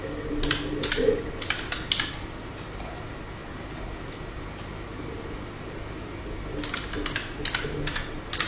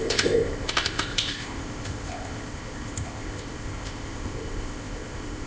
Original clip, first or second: first